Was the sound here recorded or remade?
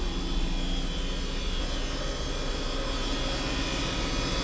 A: recorded